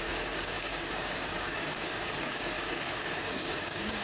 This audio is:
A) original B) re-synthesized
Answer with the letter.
B